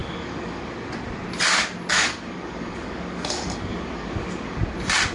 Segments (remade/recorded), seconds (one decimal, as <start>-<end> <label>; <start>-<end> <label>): 0.0-0.7 remade; 0.7-1.9 recorded; 1.9-4.6 remade; 4.6-5.1 recorded